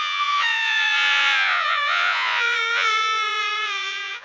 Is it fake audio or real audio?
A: fake